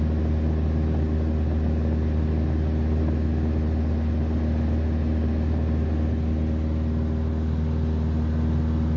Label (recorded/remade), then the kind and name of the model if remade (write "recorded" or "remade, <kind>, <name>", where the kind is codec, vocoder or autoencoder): recorded